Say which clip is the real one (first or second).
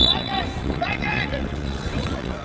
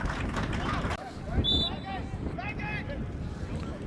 second